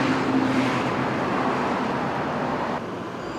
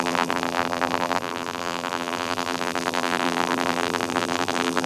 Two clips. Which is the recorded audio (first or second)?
first